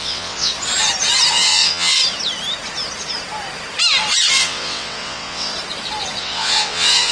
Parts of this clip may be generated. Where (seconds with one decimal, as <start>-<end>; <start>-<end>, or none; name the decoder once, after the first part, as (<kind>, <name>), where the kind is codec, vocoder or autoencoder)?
0.0-0.5 (vocoder, WaveNeXt); 1.3-2.0; 4.3-5.5; 6.2-7.1